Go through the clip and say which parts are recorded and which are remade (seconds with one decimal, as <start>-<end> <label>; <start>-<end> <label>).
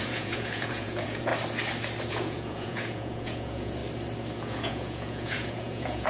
0.0-1.3 remade; 1.3-2.1 recorded; 2.1-3.8 remade; 3.8-4.4 recorded; 4.4-6.1 remade